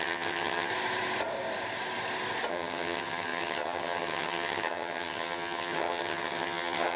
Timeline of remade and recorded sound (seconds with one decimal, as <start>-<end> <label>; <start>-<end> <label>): 0.0-0.7 remade; 0.7-2.5 recorded; 2.5-7.0 remade